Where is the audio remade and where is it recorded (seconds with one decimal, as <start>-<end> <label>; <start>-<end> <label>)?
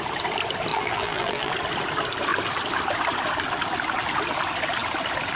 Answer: 0.0-0.7 recorded; 0.7-1.5 remade; 1.5-5.4 recorded